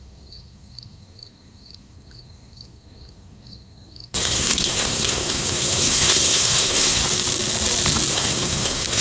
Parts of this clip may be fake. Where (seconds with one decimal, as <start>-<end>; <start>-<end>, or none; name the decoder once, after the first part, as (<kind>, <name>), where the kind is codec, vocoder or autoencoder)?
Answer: 0.0-7.0 (codec, SNAC); 8.1-9.0